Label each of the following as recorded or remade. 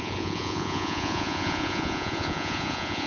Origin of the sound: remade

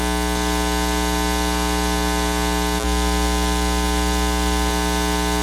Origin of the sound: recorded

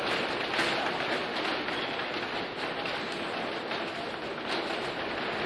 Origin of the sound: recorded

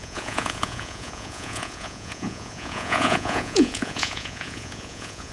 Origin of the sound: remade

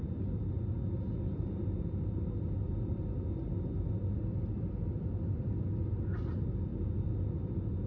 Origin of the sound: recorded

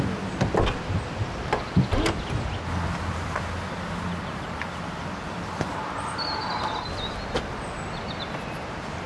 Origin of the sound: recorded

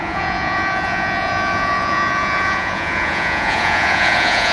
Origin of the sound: remade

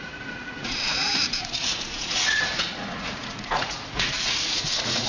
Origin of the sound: remade